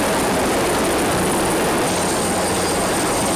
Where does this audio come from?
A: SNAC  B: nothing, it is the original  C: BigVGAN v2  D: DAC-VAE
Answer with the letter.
B